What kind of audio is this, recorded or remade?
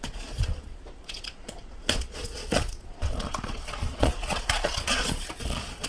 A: remade